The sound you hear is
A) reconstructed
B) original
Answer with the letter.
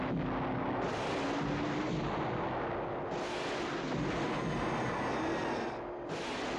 B